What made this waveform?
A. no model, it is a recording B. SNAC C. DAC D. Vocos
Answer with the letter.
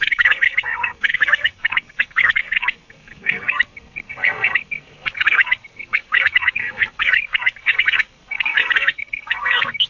B